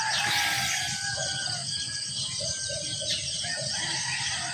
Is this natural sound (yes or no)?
yes